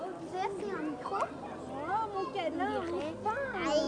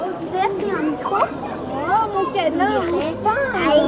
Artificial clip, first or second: second